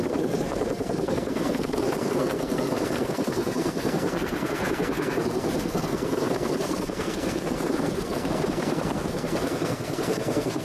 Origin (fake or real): fake